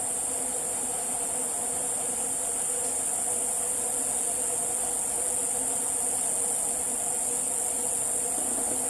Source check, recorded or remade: recorded